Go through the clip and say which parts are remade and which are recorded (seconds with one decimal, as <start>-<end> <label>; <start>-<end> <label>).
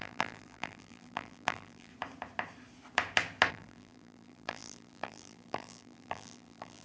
0.0-1.9 remade; 1.9-3.5 recorded; 3.5-6.8 remade